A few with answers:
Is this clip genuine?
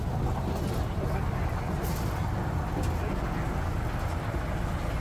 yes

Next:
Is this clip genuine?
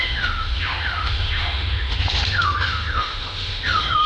no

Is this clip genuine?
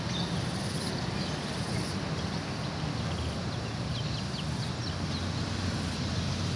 yes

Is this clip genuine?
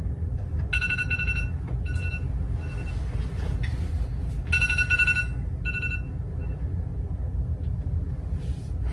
yes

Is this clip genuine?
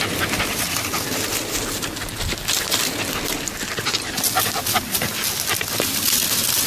yes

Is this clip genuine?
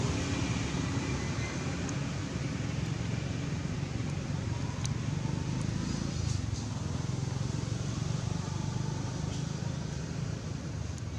yes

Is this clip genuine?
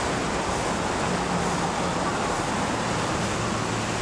yes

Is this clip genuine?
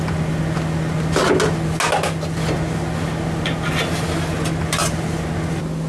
yes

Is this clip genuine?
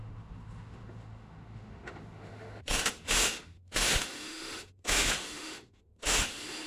no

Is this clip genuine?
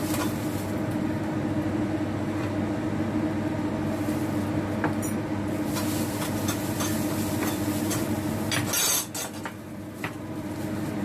yes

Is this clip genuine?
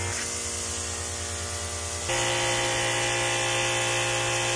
yes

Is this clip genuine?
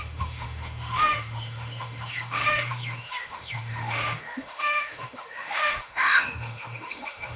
no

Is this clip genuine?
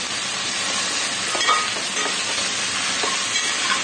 yes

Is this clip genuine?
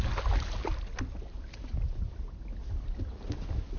yes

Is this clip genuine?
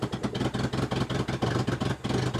yes